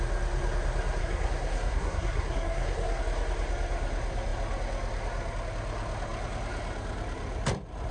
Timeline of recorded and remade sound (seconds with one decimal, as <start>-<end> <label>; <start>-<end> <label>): 0.0-1.0 recorded; 1.0-3.0 remade; 3.0-7.9 recorded